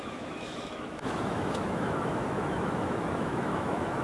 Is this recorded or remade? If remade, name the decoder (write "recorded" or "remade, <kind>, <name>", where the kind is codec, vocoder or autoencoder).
remade, autoencoder, DAC-VAE